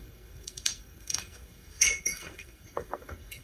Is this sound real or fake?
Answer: fake